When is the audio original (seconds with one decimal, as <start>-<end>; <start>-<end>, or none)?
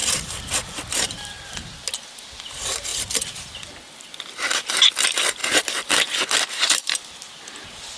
0.5-5.4; 7.1-8.0